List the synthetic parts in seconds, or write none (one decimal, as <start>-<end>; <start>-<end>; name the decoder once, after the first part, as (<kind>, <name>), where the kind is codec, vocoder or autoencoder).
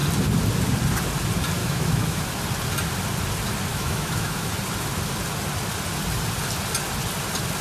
1.6-2.2 (autoencoder, DAC-VAE); 3.7-4.5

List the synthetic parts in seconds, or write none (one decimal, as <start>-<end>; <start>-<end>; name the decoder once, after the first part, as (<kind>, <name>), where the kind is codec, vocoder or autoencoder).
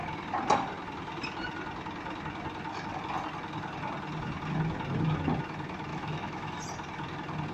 5.9-6.6 (autoencoder, DAC-VAE)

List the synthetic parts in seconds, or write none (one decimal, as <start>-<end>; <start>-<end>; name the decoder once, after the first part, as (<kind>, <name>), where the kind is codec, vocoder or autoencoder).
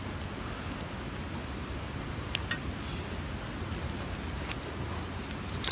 none